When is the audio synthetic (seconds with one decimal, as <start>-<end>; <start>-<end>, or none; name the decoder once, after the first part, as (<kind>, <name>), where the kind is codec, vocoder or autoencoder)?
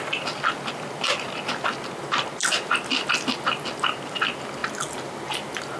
none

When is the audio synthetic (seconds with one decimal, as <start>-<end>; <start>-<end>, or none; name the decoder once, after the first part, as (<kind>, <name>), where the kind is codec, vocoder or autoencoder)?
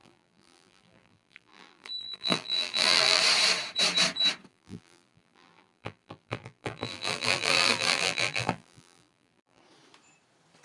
0.0-3.2 (vocoder, BigVGAN v2); 4.5-9.6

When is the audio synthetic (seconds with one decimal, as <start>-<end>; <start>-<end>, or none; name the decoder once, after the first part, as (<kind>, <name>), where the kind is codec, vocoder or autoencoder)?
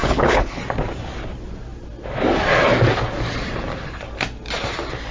0.0-0.6 (codec, HILCodec)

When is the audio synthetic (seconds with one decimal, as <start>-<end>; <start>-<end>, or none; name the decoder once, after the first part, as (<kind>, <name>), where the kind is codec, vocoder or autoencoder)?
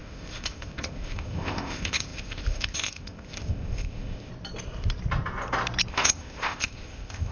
0.0-4.3 (codec, ZipCodec); 5.9-7.3